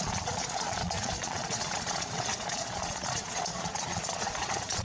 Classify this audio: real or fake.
fake